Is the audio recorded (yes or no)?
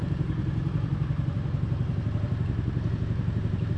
no